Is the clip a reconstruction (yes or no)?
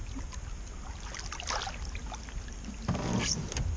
no